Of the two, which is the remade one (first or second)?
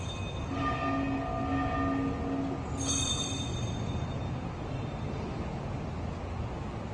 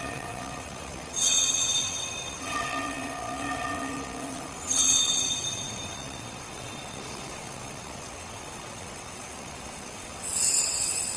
second